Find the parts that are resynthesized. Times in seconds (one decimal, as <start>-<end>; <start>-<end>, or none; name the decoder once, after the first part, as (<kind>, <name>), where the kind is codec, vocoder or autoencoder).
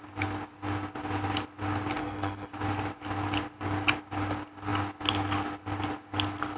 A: 2.0-2.5 (codec, SNAC)